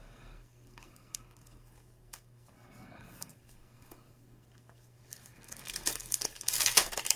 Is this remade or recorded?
remade